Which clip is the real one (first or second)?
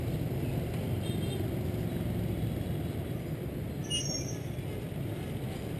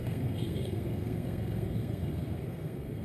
first